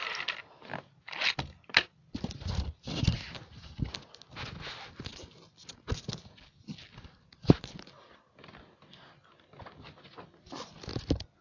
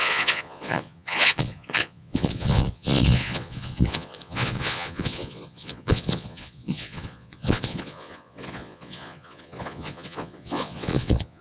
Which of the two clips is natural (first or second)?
first